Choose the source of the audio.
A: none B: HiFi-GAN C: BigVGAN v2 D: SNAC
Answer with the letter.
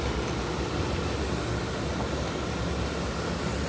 A